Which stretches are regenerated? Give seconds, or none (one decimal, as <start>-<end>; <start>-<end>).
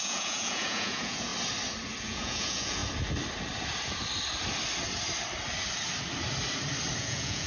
0.0-1.3; 2.0-2.8; 7.0-7.5